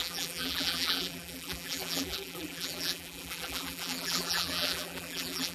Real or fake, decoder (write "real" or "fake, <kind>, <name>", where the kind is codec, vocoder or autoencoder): fake, vocoder, BigVGAN v2